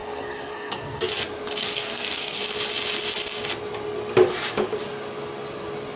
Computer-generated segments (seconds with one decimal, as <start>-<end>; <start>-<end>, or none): 0.0-1.1; 1.6-2.4